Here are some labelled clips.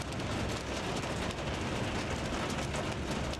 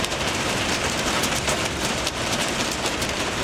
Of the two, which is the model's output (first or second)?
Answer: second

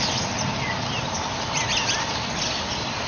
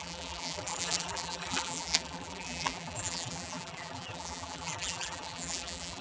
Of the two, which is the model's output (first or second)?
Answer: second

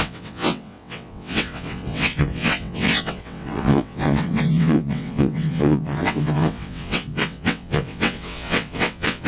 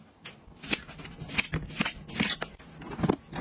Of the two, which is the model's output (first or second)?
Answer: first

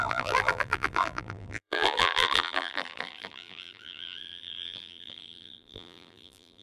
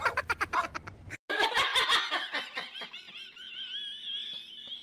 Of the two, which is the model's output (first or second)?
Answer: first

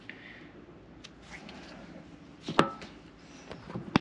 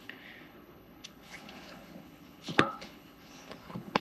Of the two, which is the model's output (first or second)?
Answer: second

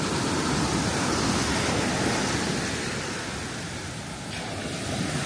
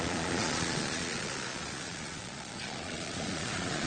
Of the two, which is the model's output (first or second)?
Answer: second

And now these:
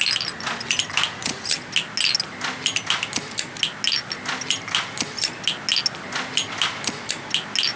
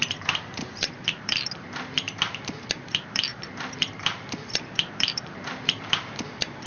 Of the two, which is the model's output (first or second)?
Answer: second